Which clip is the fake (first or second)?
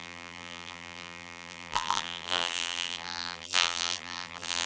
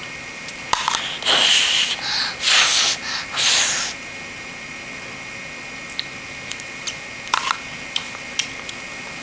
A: first